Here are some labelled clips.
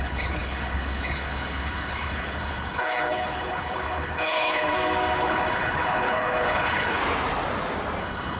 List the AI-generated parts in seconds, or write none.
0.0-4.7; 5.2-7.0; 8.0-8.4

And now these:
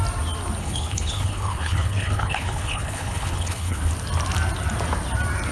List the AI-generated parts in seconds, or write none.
0.6-3.9

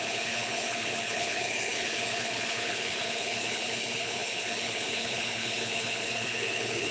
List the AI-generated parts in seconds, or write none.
0.0-6.9

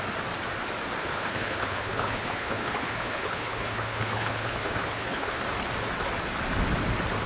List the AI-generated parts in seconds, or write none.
1.0-5.4

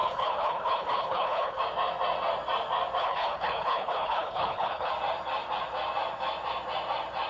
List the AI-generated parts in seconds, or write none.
0.0-1.6; 3.0-4.9

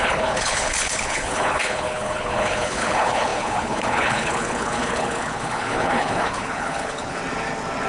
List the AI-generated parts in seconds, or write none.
0.0-7.2

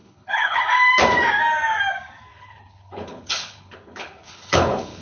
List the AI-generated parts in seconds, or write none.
0.0-0.6; 2.3-5.0